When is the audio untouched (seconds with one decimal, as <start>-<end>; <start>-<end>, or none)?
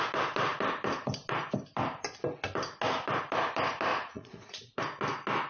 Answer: 0.0-3.9; 4.8-5.5